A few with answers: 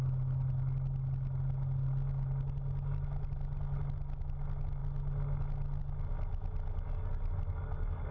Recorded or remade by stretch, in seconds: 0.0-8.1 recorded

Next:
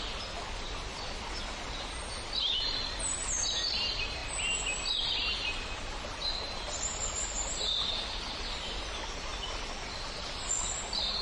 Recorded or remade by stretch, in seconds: 0.0-9.3 recorded; 9.3-10.7 remade; 10.7-11.2 recorded

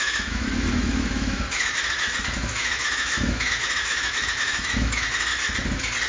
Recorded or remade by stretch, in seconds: 0.0-5.3 remade; 5.3-6.1 recorded

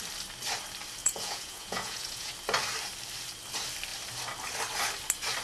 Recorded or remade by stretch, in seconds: 0.0-1.0 recorded; 1.0-2.3 remade; 2.3-5.4 recorded

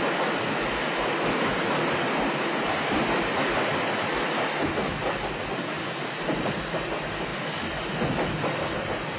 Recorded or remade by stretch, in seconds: 0.0-9.2 recorded

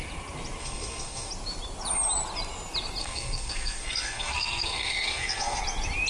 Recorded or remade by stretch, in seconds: 0.0-0.6 recorded; 0.6-1.3 remade; 1.3-3.0 recorded; 3.0-5.6 remade; 5.6-6.1 recorded

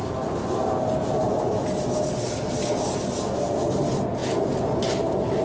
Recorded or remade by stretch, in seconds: 0.0-5.4 recorded

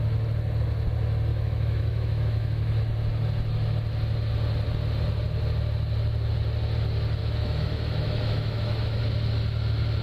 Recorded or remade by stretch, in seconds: 0.0-1.3 recorded; 1.3-2.8 remade; 2.8-7.2 recorded; 7.2-9.0 remade; 9.0-10.0 recorded